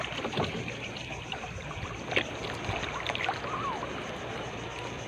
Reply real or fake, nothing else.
real